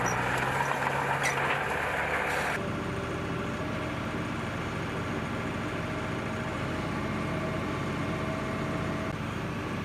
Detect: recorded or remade recorded